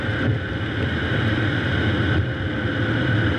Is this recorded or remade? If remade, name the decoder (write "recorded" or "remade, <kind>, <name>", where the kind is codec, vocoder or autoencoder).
recorded